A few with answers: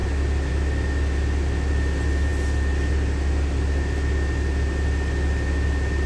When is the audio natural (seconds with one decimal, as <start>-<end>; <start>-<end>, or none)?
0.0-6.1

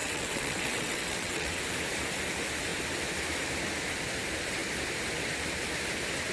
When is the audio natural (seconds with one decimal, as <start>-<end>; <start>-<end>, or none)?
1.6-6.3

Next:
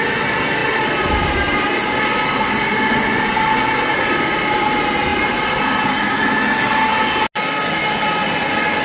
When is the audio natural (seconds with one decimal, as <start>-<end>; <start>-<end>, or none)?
0.0-8.8